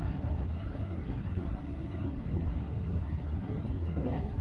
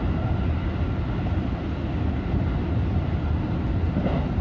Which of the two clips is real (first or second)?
second